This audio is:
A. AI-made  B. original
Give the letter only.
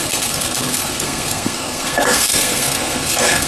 A